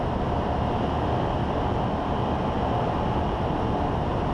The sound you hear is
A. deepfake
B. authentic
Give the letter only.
B